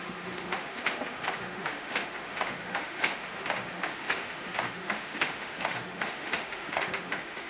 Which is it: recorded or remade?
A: remade